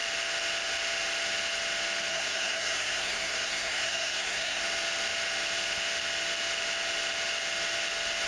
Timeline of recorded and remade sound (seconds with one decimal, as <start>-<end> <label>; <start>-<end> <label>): 0.0-2.1 recorded; 2.1-4.6 remade; 4.6-8.3 recorded